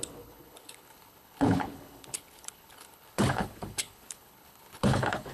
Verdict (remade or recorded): remade